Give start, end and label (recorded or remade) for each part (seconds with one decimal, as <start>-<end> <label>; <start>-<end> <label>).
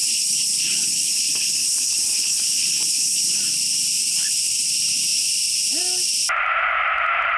0.0-3.4 remade; 3.4-7.4 recorded